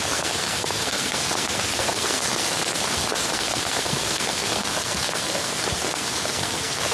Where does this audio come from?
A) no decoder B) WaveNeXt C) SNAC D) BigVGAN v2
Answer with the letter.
C